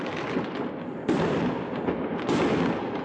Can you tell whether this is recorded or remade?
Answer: recorded